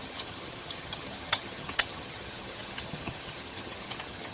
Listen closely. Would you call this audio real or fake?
fake